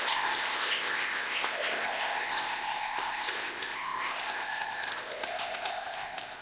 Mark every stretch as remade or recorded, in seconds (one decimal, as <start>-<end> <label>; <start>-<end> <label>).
0.0-6.4 remade